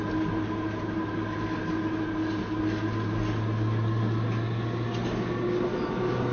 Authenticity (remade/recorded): recorded